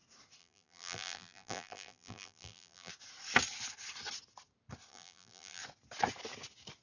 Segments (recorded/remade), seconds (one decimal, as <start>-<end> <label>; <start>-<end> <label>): 0.0-0.4 recorded; 0.4-2.9 remade; 2.9-4.9 recorded; 4.9-5.6 remade; 5.6-6.8 recorded